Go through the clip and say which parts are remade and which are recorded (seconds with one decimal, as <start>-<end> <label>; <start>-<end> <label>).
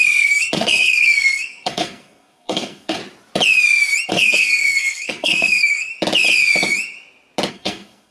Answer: 0.0-3.0 remade; 3.0-4.1 recorded; 4.1-5.9 remade; 5.9-7.5 recorded; 7.5-8.1 remade